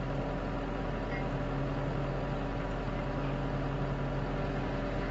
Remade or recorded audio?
recorded